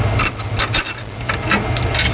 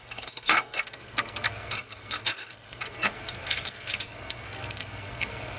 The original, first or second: first